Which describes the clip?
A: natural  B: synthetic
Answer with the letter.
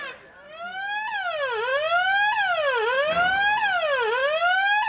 A